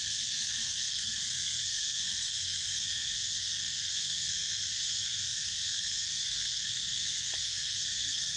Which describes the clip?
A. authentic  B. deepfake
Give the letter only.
B